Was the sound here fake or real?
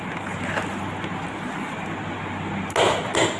real